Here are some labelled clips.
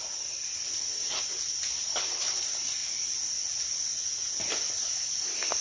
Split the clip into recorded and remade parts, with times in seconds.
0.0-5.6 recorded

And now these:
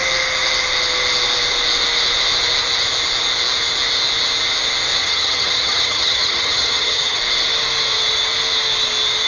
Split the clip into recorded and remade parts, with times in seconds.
0.0-5.0 recorded; 5.0-7.2 remade; 7.2-9.3 recorded